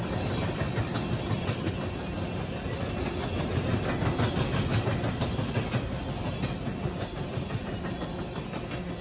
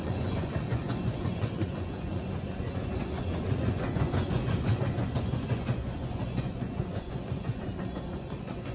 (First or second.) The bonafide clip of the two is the first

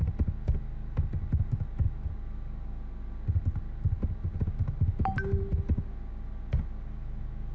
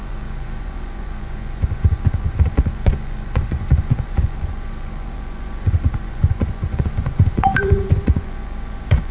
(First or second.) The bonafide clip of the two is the first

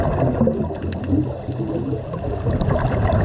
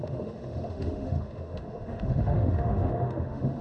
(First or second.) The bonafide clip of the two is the first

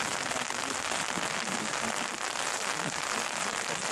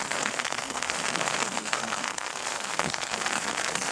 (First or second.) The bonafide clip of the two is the first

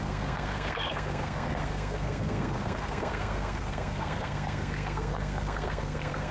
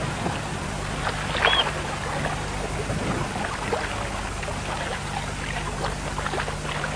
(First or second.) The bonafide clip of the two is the second